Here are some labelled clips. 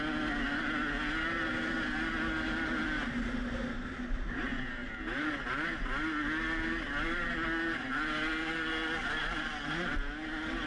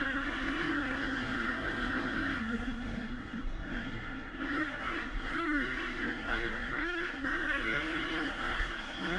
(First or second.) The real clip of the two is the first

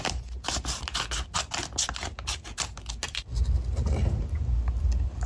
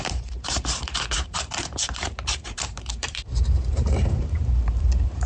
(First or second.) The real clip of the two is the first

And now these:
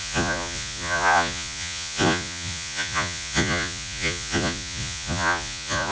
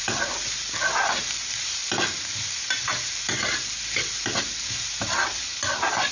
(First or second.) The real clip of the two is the second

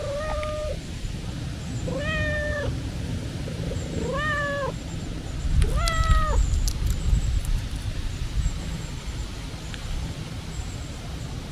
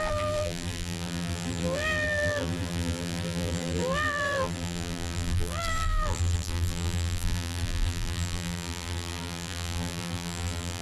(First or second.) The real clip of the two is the first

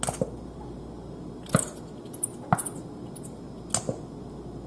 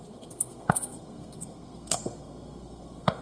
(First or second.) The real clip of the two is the first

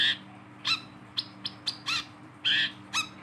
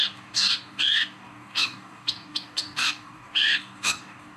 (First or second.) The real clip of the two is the first